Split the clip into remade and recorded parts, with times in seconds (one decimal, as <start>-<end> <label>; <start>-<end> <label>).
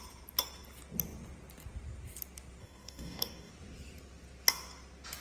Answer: 0.0-2.6 recorded; 2.6-3.5 remade; 3.5-5.2 recorded